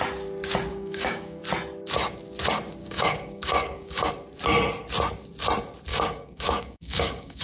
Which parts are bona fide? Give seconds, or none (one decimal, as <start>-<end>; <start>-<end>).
0.0-0.7; 1.4-2.8; 4.1-5.9